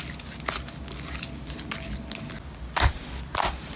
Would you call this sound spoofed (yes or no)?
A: no